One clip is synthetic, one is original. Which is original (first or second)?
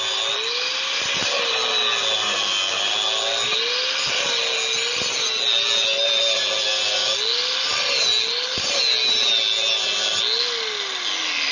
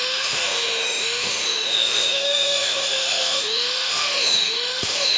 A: first